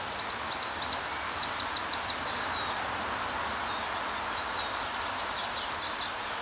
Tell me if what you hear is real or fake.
real